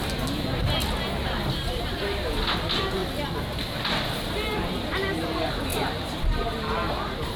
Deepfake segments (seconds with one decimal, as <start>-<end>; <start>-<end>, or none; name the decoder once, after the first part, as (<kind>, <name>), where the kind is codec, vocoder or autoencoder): 5.7-6.6 (vocoder, BigVGAN v2)